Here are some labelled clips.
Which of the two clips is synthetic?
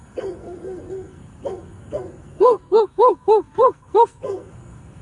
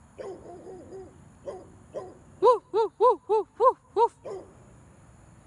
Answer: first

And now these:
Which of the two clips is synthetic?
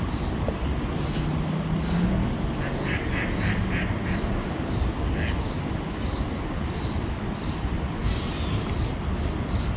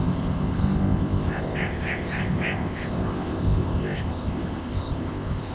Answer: second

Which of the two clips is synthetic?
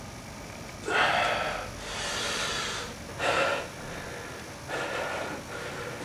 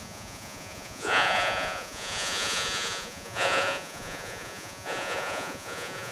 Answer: second